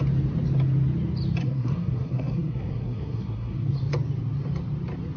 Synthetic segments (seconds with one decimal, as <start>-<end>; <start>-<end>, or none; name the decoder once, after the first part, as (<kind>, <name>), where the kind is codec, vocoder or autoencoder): 1.4-3.8 (codec, SNAC)